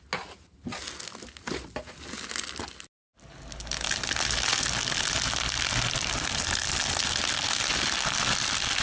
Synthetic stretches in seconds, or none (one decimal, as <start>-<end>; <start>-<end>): none